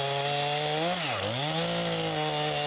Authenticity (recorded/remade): recorded